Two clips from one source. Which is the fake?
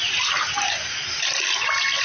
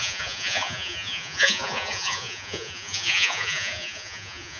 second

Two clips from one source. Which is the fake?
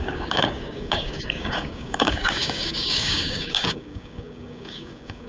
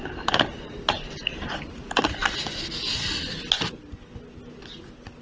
first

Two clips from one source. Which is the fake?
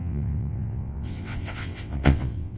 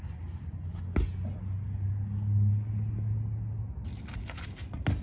first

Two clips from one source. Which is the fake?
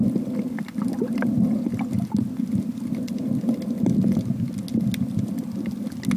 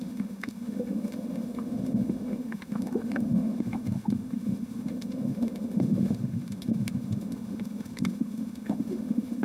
second